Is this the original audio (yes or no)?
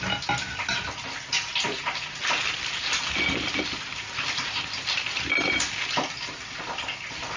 yes